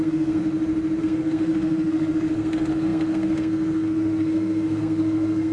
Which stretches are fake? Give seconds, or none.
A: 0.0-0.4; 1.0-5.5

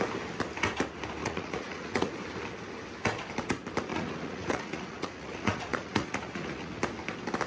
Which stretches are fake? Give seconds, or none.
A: 1.2-2.1; 3.9-6.7

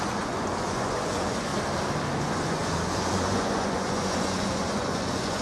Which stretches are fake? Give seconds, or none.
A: 0.0-1.5; 2.1-5.4

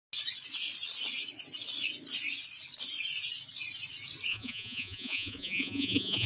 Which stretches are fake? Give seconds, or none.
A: 4.3-6.3

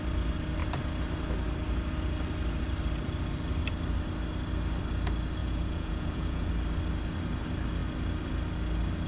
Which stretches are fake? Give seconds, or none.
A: 5.4-6.5

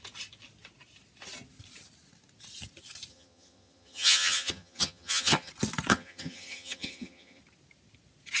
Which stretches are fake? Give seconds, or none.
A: 3.1-5.5; 5.9-7.4

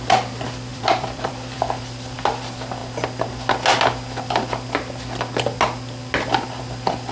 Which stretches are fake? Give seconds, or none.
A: 0.7-1.8